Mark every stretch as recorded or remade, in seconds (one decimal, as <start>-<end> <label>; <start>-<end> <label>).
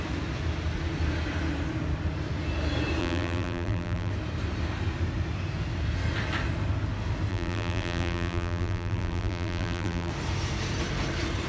0.0-3.0 recorded; 3.0-4.1 remade; 4.1-7.3 recorded; 7.3-10.1 remade; 10.1-11.5 recorded